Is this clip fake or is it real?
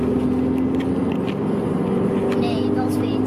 real